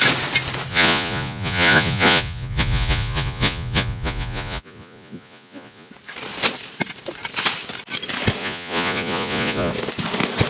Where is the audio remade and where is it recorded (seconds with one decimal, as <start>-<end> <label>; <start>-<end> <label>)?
0.0-0.7 recorded; 0.7-5.9 remade; 5.9-8.4 recorded; 8.4-9.7 remade; 9.7-10.5 recorded